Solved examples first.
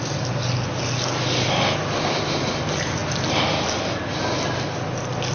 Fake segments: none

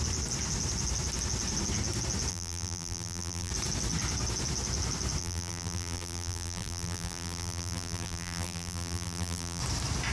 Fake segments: 2.3-3.5; 5.2-9.6

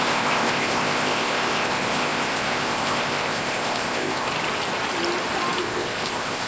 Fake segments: 0.0-4.3; 5.6-6.5

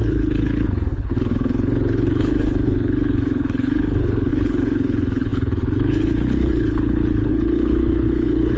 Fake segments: 0.0-8.6